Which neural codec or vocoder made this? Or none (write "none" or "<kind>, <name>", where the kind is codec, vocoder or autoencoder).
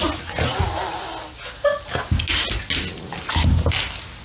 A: none